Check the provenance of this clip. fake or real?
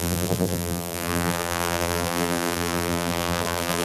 fake